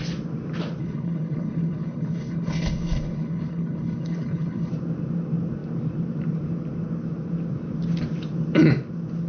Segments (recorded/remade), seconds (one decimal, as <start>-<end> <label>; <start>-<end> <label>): 0.0-0.8 recorded; 0.8-4.7 remade; 4.7-9.3 recorded